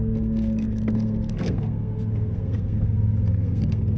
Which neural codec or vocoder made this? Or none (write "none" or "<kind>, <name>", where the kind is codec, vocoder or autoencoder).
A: codec, SNAC